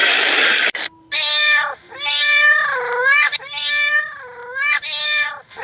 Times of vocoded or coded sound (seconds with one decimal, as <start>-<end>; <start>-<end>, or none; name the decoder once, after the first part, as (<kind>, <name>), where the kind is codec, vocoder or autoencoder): 0.0-5.6 (vocoder, BigVGAN v2)